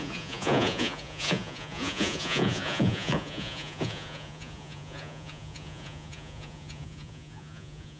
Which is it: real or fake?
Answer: fake